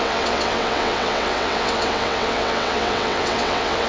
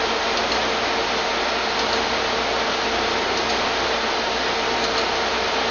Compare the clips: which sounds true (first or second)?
second